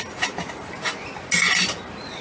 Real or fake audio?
real